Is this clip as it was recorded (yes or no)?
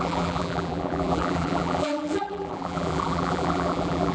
no